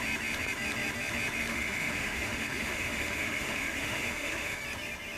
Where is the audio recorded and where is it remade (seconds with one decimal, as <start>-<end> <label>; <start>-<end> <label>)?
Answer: 0.0-1.5 recorded; 1.5-4.6 remade; 4.6-5.2 recorded